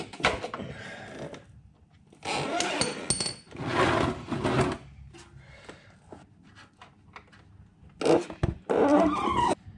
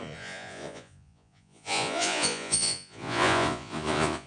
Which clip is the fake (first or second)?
second